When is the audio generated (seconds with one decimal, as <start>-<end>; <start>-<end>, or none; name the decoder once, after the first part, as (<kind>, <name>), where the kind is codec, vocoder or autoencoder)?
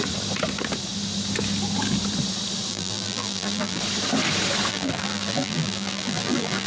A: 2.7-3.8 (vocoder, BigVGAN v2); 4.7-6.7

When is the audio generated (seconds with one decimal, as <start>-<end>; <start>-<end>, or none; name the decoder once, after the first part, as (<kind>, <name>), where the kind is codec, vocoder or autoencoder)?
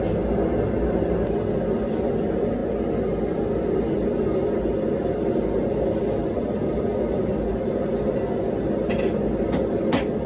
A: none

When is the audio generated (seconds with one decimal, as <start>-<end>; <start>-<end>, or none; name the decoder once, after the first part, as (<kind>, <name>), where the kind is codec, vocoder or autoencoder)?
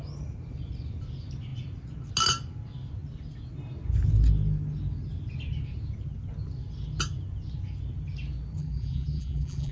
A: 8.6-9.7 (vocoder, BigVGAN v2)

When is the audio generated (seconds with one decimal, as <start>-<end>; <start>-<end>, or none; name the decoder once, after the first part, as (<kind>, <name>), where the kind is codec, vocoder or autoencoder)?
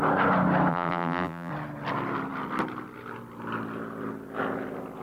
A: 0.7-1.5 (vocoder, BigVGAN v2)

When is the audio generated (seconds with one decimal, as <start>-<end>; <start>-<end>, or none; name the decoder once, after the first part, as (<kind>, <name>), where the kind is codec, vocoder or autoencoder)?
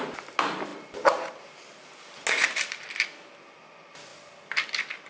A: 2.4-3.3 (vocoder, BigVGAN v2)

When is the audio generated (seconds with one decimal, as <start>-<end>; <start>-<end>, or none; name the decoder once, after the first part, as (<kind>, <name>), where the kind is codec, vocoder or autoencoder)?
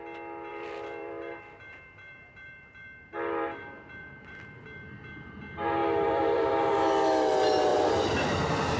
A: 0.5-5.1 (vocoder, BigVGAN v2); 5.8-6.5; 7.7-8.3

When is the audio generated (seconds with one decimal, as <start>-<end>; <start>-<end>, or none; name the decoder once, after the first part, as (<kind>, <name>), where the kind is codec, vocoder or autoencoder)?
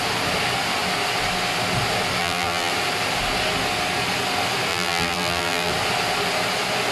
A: 2.2-2.7 (vocoder, BigVGAN v2); 4.7-5.7